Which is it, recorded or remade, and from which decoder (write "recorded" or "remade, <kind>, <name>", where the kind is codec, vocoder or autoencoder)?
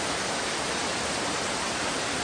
recorded